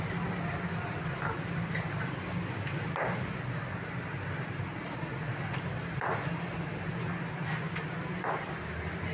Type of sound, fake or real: real